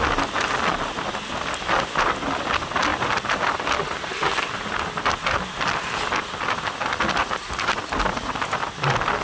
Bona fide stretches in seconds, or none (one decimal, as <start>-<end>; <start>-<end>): 0.0-9.2